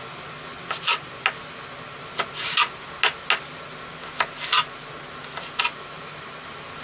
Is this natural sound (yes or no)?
yes